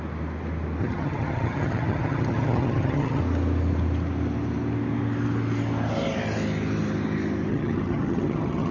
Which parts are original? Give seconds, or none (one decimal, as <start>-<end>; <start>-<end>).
0.0-0.8; 3.2-7.5